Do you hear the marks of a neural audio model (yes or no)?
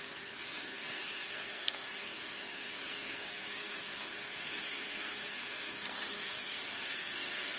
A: yes